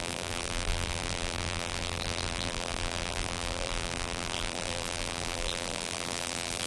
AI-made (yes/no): yes